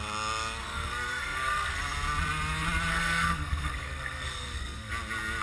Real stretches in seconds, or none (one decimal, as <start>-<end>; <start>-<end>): 0.0-0.6; 1.8-2.9; 4.9-5.4